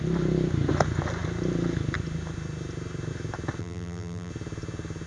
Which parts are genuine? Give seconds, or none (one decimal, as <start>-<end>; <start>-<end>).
0.0-3.6; 4.3-5.1